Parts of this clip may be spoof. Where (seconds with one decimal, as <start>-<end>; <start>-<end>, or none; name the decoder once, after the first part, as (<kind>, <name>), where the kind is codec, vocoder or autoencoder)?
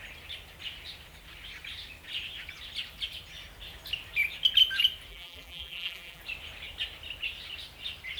5.1-6.2 (vocoder, BigVGAN v2)